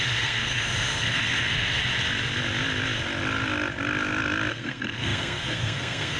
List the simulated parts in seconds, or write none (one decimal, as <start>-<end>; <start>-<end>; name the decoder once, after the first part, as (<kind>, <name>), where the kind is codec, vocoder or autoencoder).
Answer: 0.0-1.8 (codec, SNAC); 4.5-6.2